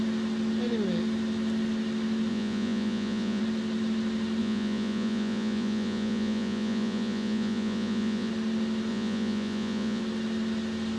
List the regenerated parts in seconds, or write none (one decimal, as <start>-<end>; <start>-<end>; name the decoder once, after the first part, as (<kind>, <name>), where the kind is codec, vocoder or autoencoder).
2.3-3.4 (vocoder, Vocos); 4.4-8.3; 8.9-10.0